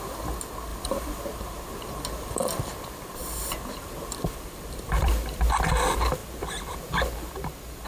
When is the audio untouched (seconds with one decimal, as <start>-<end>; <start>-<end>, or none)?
0.0-0.7; 5.4-6.2; 6.8-7.9